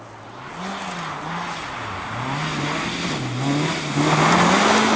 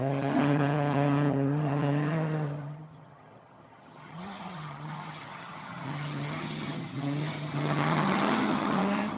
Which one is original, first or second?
first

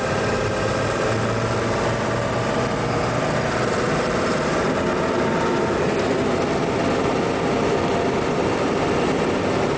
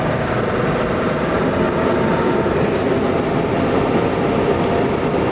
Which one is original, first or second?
first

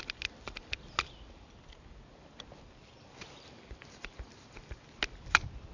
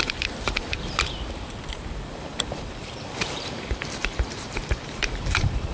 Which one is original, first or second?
first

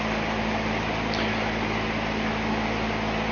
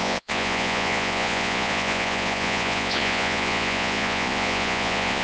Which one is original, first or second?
first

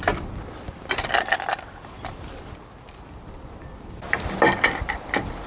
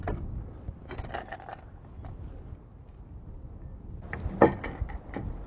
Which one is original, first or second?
second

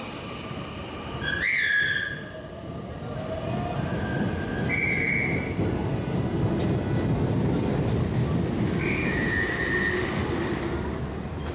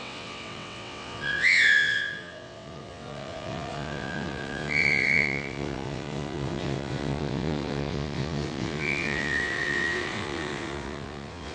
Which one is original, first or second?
first